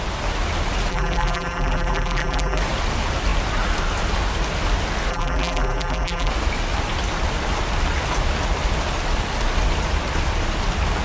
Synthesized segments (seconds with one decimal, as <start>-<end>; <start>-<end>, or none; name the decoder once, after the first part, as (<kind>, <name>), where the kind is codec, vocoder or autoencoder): 0.9-2.6 (vocoder, BigVGAN v2); 5.1-6.3